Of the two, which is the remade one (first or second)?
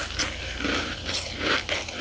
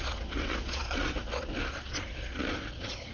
second